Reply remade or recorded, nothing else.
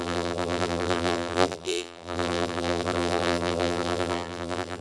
remade